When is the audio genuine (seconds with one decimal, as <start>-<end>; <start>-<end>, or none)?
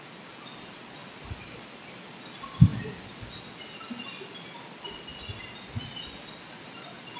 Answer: 0.0-7.2